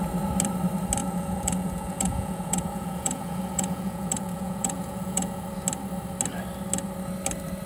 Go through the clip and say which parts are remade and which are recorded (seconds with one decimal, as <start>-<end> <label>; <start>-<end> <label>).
0.0-1.0 recorded; 1.0-5.4 remade; 5.4-7.7 recorded

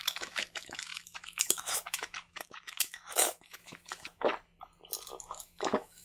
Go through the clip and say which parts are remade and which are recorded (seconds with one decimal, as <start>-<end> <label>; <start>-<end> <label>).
0.0-4.3 remade; 4.3-5.2 recorded; 5.2-6.0 remade

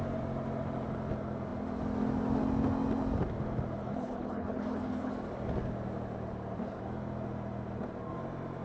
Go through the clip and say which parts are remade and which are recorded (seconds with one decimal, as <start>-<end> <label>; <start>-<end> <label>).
0.0-3.8 recorded; 3.8-5.1 remade; 5.1-8.6 recorded

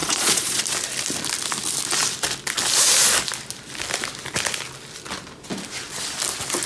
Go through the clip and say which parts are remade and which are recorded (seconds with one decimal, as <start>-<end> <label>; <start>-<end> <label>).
0.0-0.6 remade; 0.6-6.7 recorded